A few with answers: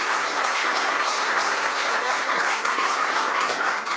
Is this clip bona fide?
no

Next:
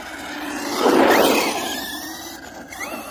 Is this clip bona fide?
yes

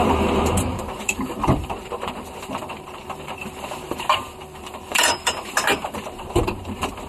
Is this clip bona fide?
no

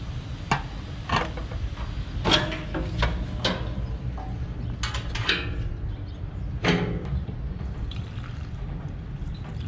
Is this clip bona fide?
yes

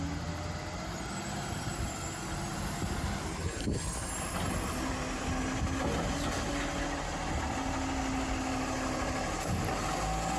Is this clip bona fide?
yes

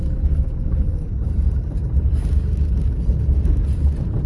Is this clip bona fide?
yes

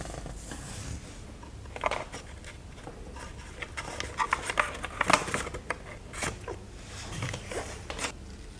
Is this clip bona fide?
yes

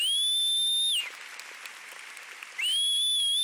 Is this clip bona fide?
yes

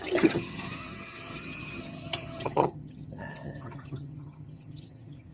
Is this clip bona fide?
no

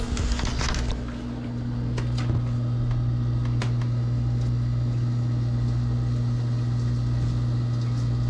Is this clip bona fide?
yes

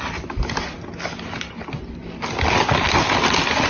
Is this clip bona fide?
yes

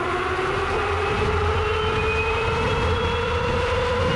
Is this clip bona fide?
yes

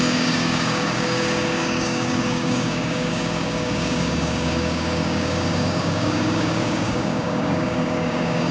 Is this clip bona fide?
no